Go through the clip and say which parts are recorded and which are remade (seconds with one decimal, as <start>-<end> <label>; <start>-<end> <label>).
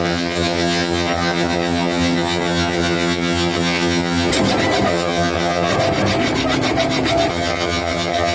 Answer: 0.0-4.3 remade; 4.3-4.9 recorded; 4.9-5.7 remade; 5.7-7.3 recorded; 7.3-8.3 remade